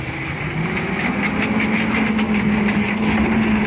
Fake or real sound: real